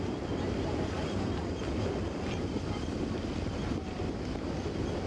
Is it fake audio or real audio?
real